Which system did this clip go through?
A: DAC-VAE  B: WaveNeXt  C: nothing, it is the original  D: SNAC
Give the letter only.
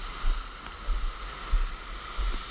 C